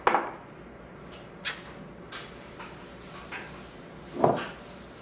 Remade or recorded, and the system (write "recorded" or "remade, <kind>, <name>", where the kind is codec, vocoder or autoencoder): recorded